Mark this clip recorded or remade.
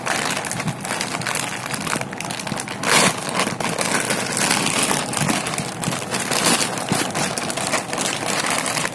recorded